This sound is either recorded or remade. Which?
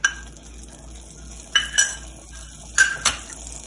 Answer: recorded